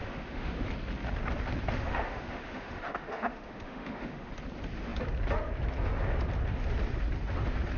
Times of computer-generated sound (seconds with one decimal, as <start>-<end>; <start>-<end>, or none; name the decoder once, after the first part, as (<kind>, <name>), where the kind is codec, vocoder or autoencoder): 0.0-0.7 (autoencoder, DAC-VAE); 1.7-4.3